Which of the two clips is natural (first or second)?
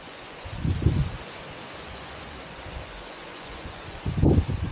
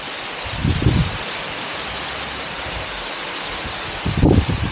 second